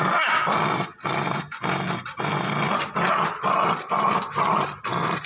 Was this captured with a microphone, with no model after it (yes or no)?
yes